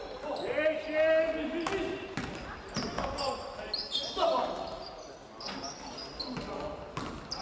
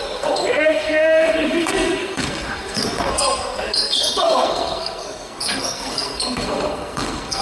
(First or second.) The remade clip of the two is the second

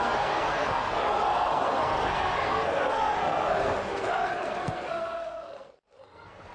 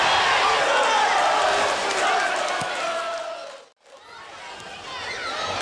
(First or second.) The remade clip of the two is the first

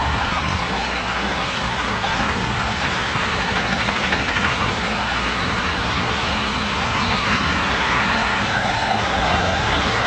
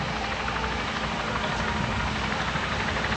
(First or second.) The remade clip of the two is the first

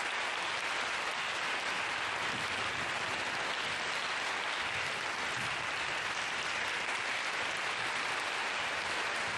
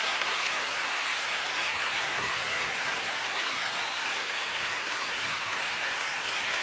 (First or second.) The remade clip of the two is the second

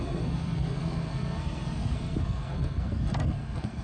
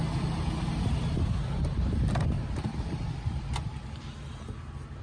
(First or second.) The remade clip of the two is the first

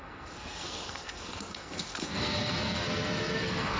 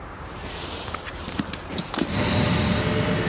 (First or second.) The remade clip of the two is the first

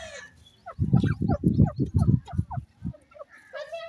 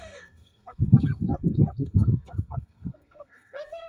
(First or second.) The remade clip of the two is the second